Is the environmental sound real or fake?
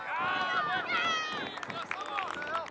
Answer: real